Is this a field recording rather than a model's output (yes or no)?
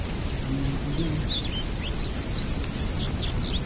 yes